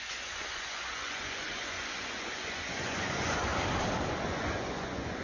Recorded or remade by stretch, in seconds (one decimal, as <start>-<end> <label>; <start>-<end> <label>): 0.0-3.5 remade; 3.5-4.2 recorded; 4.2-5.2 remade